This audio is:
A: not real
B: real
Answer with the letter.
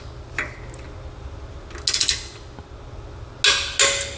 B